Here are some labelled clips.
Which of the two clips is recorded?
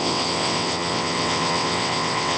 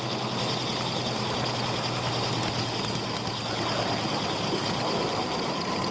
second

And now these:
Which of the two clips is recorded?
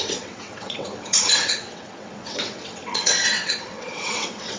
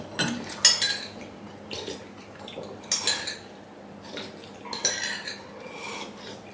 second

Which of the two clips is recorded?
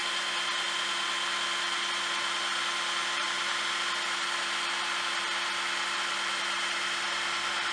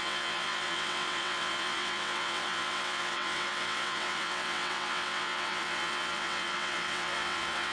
first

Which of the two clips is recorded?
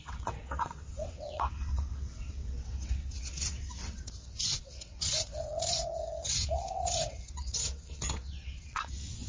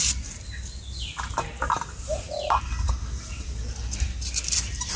second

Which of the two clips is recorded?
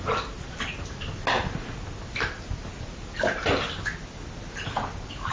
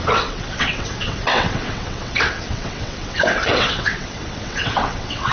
first